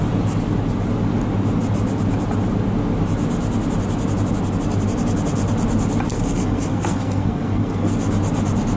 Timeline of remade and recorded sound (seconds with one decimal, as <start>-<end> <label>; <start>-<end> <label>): 0.0-6.1 recorded; 6.1-8.1 remade; 8.1-8.8 recorded